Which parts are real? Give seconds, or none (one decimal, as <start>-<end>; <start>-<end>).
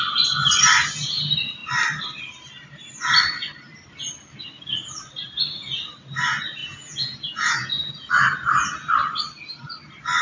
0.0-6.6; 8.1-10.2